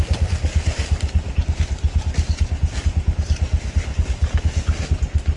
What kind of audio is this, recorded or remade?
recorded